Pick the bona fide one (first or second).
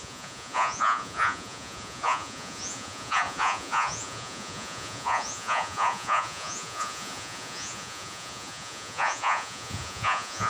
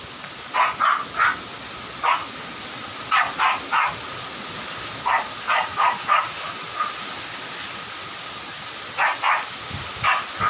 second